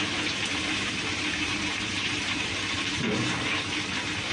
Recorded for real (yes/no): no